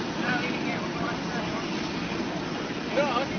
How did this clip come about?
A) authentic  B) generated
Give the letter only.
A